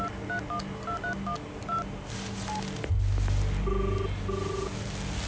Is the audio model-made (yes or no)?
no